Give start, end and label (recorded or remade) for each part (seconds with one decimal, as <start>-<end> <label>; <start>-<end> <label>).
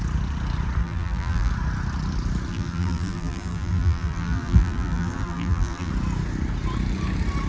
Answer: 0.0-0.8 recorded; 0.8-1.5 remade; 1.5-2.5 recorded; 2.5-5.9 remade; 5.9-7.5 recorded